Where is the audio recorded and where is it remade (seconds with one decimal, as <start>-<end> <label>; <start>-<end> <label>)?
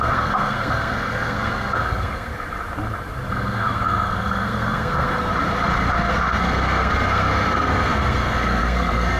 0.0-2.3 remade; 2.3-3.3 recorded; 3.3-5.3 remade; 5.3-6.1 recorded; 6.1-9.2 remade